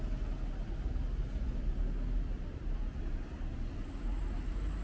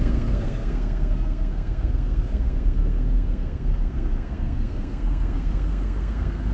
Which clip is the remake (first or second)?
second